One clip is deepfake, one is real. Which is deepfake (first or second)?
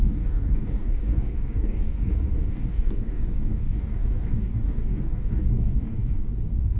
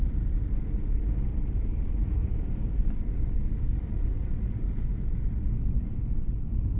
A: first